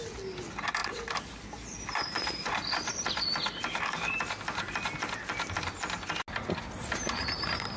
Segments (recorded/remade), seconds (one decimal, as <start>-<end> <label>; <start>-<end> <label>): 0.0-3.7 recorded; 3.7-4.2 remade; 4.2-7.8 recorded